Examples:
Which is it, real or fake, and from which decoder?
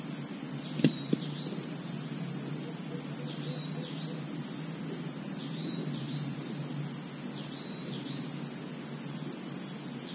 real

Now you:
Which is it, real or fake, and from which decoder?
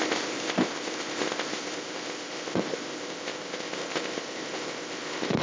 fake, codec, ZipCodec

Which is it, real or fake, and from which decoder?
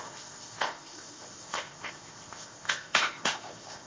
fake, codec, ZipCodec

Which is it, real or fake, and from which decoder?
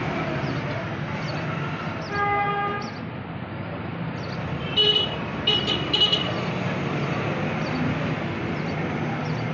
real